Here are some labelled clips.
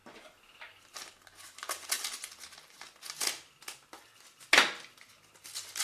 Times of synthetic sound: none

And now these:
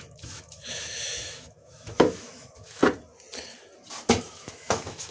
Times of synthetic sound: 0.0-2.8 (autoencoder, DAC-VAE); 4.3-5.1

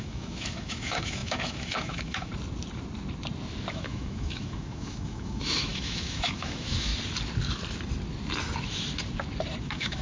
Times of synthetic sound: 0.0-2.3 (autoencoder, DAC-VAE); 3.7-6.9; 9.6-10.0

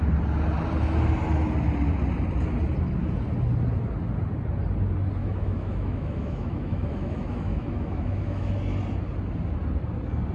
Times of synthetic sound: 5.2-8.5 (autoencoder, DAC-VAE)

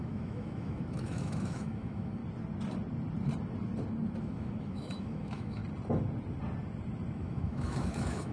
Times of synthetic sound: 0.0-2.2 (autoencoder, DAC-VAE); 4.2-5.6; 7.1-8.3

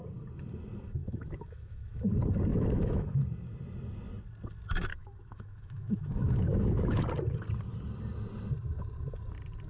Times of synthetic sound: 1.0-2.1 (autoencoder, DAC-VAE); 2.5-3.2; 4.9-7.0